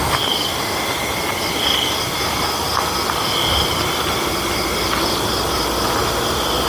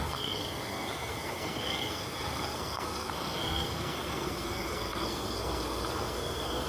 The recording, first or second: first